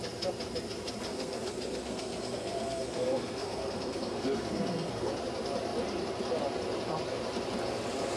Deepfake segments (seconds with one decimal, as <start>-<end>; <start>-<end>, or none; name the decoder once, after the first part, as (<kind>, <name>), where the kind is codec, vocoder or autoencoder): 1.1-5.1 (codec, SNAC)